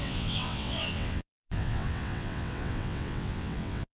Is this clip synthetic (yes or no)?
yes